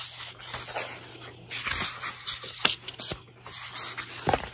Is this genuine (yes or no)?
yes